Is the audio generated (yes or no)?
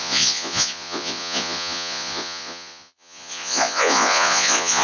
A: yes